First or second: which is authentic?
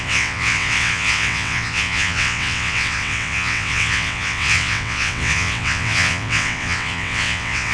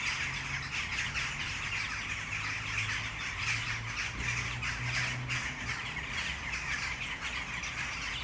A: second